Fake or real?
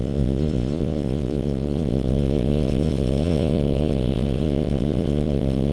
fake